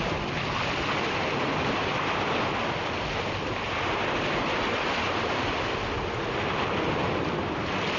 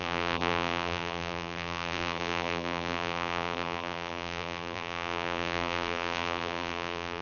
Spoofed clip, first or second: second